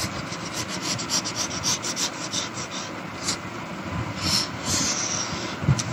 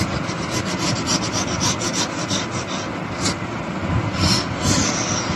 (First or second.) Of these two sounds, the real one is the first